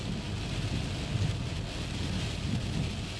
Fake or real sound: real